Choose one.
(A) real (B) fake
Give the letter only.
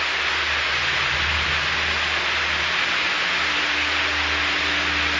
A